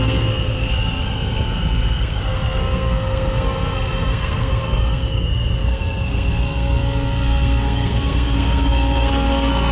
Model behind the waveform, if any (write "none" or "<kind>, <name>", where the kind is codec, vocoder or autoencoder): codec, SNAC